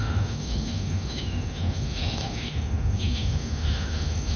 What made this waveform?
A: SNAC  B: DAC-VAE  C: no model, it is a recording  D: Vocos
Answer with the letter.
B